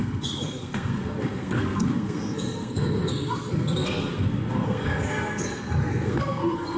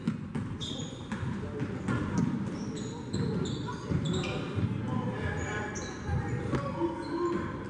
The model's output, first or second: first